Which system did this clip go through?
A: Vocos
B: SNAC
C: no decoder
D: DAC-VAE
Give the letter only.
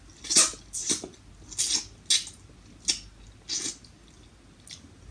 C